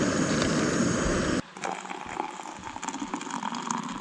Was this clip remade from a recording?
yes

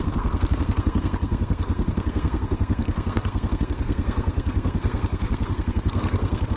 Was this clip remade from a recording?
yes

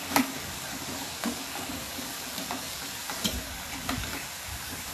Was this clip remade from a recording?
yes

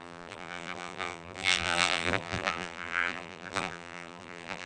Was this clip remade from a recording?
yes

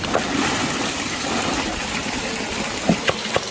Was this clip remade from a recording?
no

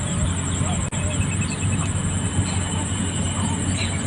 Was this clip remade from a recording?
no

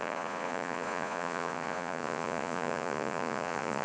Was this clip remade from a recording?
yes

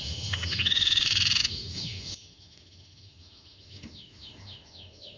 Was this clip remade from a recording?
yes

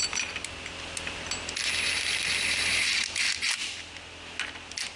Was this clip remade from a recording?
no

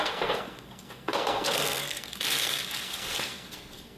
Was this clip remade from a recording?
yes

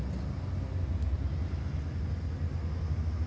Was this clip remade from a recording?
no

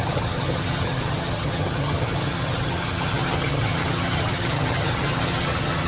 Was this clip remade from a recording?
yes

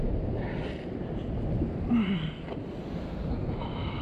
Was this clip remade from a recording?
no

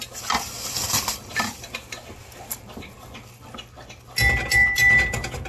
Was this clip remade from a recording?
no